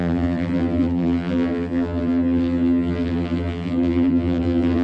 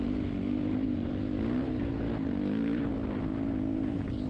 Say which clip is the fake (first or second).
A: first